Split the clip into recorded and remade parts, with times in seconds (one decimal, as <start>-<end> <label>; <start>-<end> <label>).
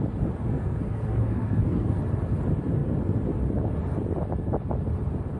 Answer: 0.0-0.5 recorded; 0.5-2.0 remade; 2.0-5.4 recorded